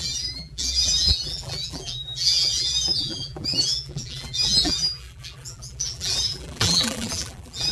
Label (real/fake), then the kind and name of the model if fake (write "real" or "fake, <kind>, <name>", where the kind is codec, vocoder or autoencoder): fake, vocoder, BigVGAN v2